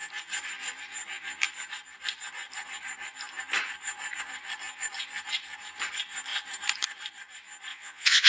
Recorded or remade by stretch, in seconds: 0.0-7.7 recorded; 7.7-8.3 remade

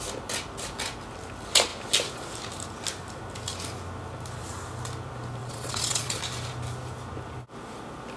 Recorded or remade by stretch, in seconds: 0.0-5.4 recorded; 5.4-6.2 remade; 6.2-8.2 recorded

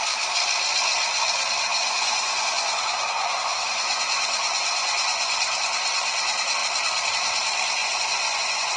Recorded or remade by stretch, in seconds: 0.0-1.7 recorded; 1.7-5.4 remade; 5.4-7.8 recorded; 7.8-8.8 remade